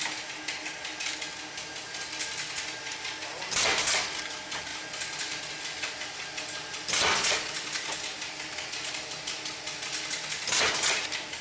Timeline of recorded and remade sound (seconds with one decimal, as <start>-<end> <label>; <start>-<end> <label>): 0.0-11.4 recorded